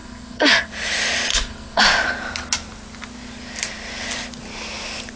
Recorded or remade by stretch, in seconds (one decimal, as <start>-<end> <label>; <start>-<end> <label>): 0.0-0.7 remade; 0.7-1.3 recorded; 1.3-1.8 remade; 1.8-5.2 recorded